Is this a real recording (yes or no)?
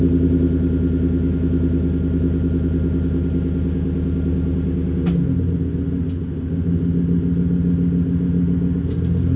yes